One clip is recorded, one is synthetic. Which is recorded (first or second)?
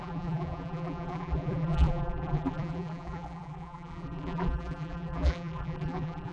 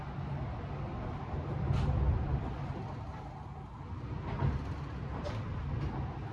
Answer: second